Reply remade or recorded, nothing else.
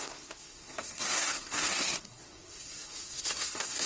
remade